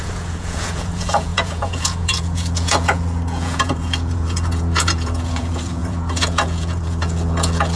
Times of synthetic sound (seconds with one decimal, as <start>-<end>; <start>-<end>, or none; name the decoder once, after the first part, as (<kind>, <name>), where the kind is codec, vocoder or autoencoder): 0.0-7.8 (vocoder, Vocos)